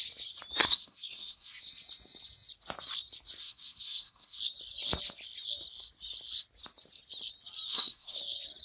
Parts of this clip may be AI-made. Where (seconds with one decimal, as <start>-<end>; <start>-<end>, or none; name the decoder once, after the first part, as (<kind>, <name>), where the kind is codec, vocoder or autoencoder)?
0.6-1.6 (codec, SNAC); 3.4-4.4; 7.7-8.2